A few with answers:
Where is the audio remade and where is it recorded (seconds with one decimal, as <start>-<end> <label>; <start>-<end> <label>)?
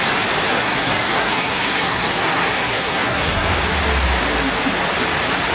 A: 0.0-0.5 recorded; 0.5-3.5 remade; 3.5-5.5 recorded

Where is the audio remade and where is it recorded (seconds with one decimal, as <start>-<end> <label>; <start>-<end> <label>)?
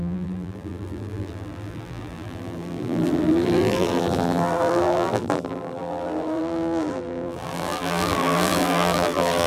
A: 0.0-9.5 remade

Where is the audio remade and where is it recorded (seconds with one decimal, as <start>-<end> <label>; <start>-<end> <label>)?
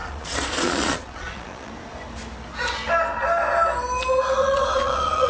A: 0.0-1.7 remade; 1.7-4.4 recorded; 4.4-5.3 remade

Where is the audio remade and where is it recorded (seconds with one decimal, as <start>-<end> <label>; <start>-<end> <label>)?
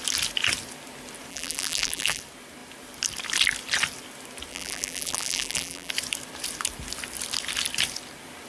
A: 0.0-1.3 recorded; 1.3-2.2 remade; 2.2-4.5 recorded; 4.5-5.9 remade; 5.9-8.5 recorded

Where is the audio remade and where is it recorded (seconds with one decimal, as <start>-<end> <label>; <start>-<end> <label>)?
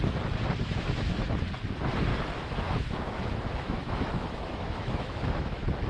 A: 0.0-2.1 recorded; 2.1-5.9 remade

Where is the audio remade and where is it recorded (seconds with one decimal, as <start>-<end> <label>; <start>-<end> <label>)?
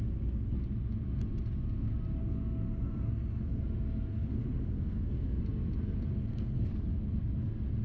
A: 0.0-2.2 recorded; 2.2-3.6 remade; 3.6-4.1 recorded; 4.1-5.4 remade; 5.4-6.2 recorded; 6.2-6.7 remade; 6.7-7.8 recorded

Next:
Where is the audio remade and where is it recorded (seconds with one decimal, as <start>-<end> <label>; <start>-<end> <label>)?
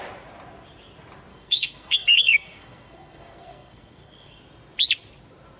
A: 0.0-1.3 recorded; 1.3-4.4 remade; 4.4-5.6 recorded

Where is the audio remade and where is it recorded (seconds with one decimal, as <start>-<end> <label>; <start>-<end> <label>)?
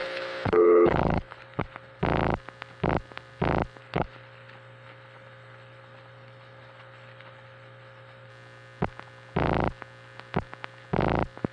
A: 0.0-2.0 remade; 2.0-3.8 recorded; 3.8-8.3 remade; 8.3-11.5 recorded